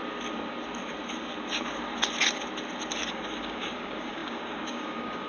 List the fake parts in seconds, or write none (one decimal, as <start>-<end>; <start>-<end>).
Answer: 3.1-5.3